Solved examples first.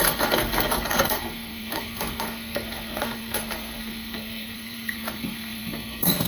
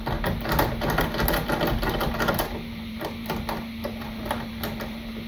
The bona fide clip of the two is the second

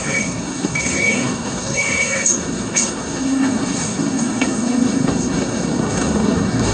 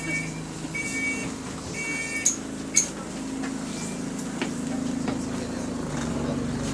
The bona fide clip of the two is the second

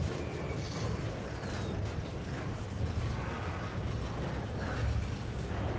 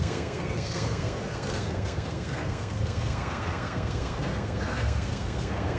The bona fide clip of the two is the first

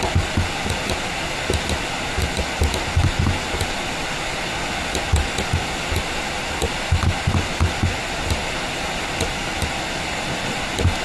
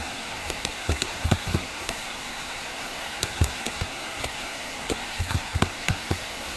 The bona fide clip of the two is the first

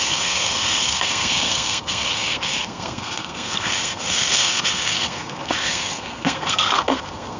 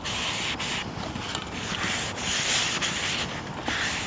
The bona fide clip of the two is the second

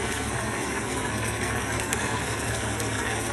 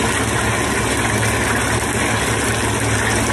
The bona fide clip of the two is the second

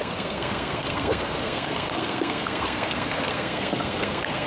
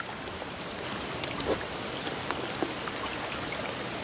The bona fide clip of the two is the second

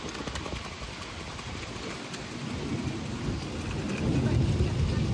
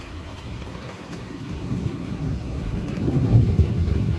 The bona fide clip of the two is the first